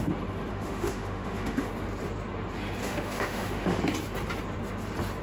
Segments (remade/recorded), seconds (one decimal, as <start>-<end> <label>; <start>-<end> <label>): 0.0-0.5 recorded; 0.5-1.7 remade; 1.7-2.8 recorded; 2.8-3.8 remade; 3.8-5.2 recorded